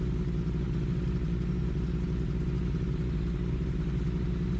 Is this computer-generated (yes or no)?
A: no